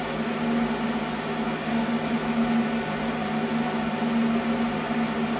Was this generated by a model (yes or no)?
no